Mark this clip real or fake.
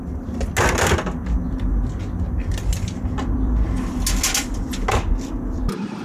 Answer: real